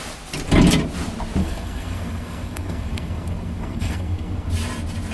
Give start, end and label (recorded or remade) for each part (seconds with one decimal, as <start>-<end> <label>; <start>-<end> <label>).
0.0-1.4 recorded; 1.4-4.5 remade; 4.5-5.1 recorded